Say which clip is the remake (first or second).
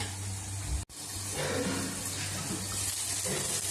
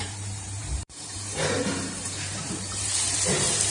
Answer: second